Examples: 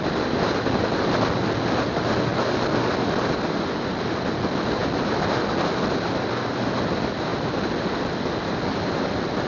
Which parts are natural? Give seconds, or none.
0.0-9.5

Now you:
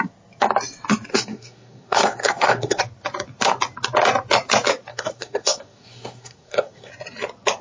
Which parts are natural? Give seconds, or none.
0.0-1.1; 2.8-4.9; 6.9-7.6

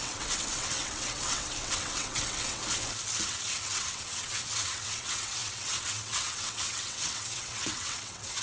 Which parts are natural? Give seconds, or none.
2.6-3.2